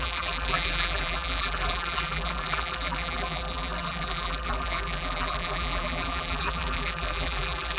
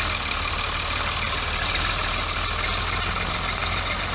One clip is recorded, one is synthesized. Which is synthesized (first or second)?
first